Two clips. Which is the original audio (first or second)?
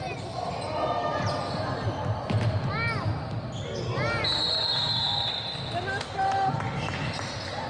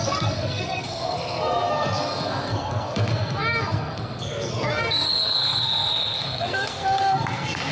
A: first